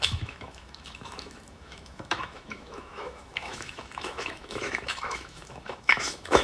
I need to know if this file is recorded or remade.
remade